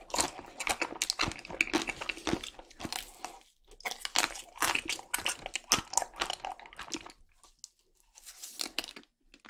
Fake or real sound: real